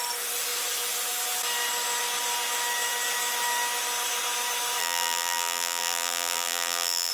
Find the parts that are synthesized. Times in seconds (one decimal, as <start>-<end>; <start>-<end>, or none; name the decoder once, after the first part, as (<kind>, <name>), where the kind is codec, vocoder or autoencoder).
4.8-7.1 (vocoder, BigVGAN v2)